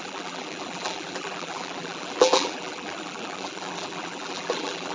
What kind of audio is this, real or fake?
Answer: fake